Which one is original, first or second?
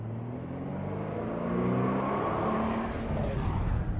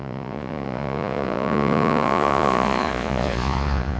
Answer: first